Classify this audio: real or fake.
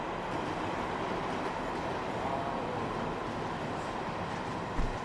real